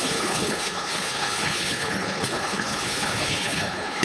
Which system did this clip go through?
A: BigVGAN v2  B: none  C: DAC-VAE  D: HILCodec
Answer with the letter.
D